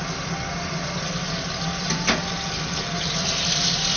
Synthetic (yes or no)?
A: no